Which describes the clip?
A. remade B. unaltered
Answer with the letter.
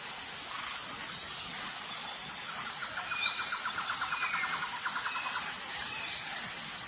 B